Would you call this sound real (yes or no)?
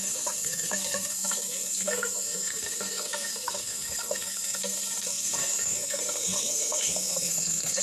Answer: no